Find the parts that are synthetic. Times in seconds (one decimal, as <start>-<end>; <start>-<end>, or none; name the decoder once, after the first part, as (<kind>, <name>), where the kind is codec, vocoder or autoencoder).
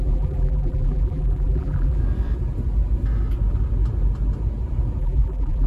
0.0-2.0 (vocoder, BigVGAN v2); 5.0-5.7